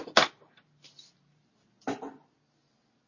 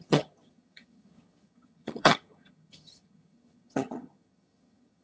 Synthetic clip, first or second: second